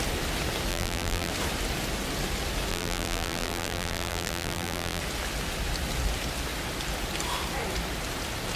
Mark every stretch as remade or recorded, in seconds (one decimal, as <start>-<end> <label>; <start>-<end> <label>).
0.0-0.7 recorded; 0.7-1.3 remade; 1.3-2.7 recorded; 2.7-5.0 remade; 5.0-8.6 recorded